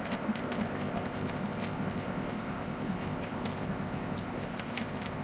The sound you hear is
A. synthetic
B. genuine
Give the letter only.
A